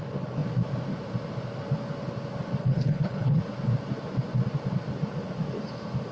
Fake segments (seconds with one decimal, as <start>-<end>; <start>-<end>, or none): 2.6-3.4